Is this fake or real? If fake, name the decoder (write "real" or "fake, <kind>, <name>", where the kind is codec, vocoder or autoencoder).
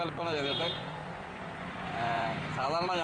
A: fake, vocoder, Vocos